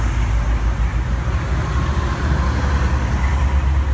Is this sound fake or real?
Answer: real